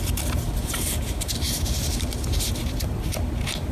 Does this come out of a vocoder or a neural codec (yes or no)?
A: yes